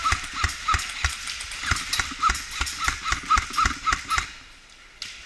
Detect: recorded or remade recorded